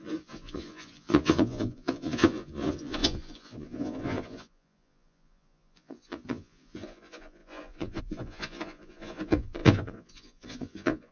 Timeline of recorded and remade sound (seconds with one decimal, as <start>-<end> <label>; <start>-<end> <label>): 0.0-11.1 remade